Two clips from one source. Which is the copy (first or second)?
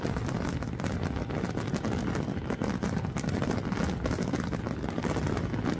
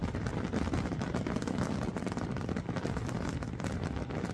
second